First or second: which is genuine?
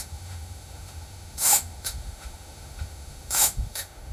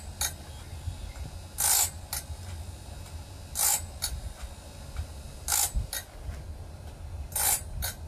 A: second